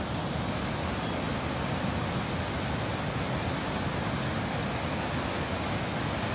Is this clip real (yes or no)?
yes